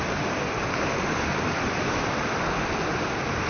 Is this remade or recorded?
recorded